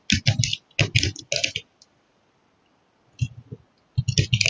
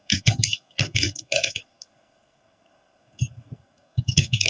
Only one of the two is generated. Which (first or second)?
second